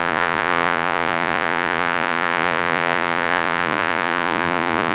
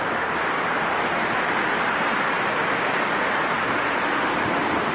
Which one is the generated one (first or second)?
first